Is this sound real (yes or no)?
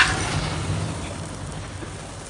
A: yes